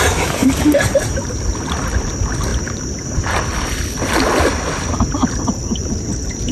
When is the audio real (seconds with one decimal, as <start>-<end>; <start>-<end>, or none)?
0.0-6.5